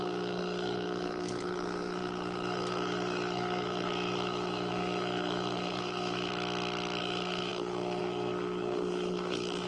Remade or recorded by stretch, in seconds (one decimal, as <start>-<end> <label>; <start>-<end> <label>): 0.0-6.3 remade; 6.3-7.0 recorded; 7.0-9.7 remade